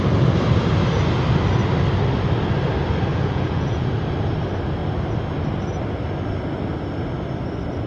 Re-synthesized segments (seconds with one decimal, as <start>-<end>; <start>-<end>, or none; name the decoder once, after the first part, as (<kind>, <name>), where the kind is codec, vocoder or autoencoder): 3.1-3.9 (vocoder, Vocos)